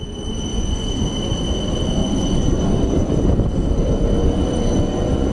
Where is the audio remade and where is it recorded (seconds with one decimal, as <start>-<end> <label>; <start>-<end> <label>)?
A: 0.0-0.5 recorded; 0.5-1.0 remade; 1.0-2.0 recorded; 2.0-2.6 remade; 2.6-4.2 recorded; 4.2-5.3 remade